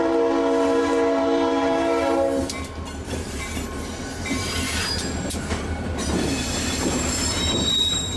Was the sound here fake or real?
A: fake